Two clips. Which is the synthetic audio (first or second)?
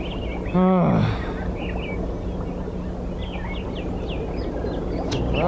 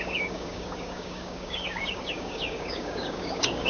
second